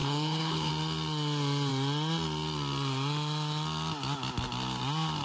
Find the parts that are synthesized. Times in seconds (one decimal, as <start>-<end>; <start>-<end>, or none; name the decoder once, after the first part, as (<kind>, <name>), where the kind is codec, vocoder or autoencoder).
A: 0.0-0.7 (codec, HILCodec)